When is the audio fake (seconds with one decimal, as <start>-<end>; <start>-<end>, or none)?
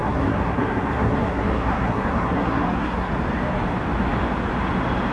0.0-3.1